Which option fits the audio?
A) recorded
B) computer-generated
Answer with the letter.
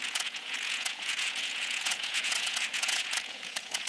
B